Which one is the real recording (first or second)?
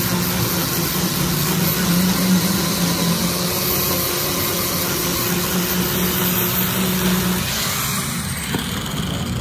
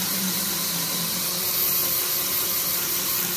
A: first